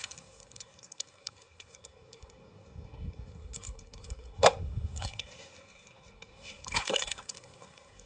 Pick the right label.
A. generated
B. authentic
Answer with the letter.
A